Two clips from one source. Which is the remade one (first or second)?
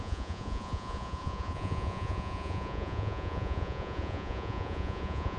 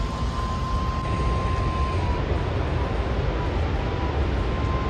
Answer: first